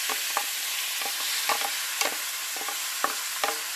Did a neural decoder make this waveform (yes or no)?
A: no